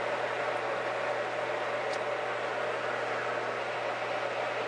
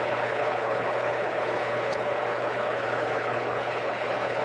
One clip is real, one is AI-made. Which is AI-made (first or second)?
second